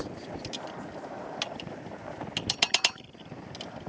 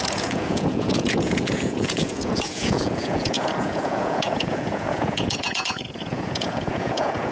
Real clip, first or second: first